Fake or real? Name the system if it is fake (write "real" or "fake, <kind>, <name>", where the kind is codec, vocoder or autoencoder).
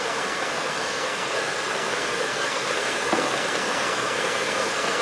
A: fake, codec, SNAC